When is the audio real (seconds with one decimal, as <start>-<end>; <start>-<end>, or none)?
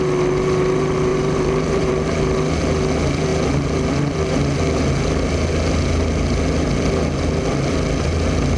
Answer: 0.0-1.1; 1.9-8.6